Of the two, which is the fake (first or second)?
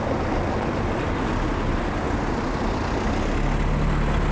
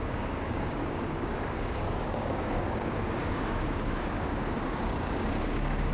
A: second